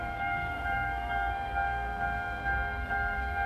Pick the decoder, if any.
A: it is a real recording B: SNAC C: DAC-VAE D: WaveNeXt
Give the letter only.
B